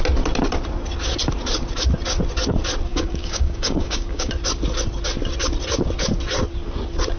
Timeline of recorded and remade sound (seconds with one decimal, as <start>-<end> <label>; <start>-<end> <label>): 0.0-2.9 recorded; 2.9-4.3 remade; 4.3-7.2 recorded